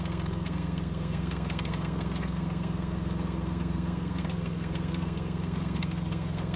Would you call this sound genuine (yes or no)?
no